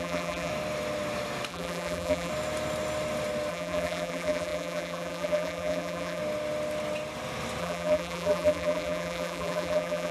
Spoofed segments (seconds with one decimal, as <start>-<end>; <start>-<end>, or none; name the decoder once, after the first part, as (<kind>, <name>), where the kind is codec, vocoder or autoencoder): 0.0-0.5 (vocoder, BigVGAN v2); 1.5-2.3; 3.5-6.2; 7.6-10.1